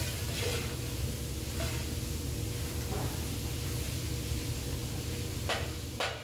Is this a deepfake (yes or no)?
no